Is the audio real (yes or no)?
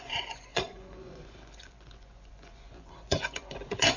no